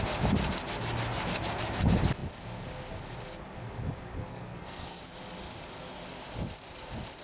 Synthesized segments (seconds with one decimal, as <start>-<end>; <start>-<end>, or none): 4.3-5.0

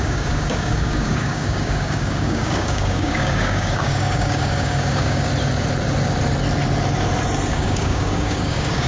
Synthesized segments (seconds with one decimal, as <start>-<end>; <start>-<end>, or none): 0.0-5.3; 7.5-8.9

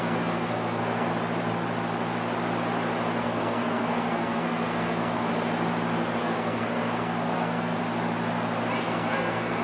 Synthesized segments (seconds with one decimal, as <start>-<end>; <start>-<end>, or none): 0.0-1.1; 3.2-5.3; 6.2-7.8; 8.8-9.6

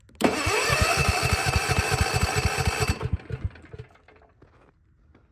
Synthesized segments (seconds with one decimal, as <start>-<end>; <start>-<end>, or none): 1.0-4.2

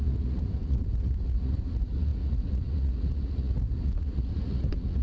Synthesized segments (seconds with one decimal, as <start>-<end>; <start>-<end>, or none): 0.0-5.0

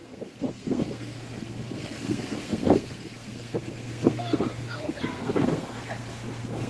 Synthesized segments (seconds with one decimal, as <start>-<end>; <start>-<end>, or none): 0.0-6.7

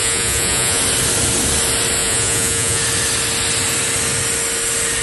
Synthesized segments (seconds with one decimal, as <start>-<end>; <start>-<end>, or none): 0.0-0.8; 2.0-2.8